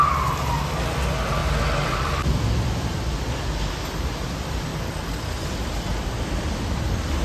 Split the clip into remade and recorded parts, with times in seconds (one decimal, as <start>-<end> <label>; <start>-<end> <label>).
0.0-7.2 recorded